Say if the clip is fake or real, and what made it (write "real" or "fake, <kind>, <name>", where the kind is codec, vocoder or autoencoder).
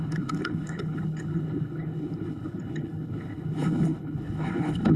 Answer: fake, codec, HILCodec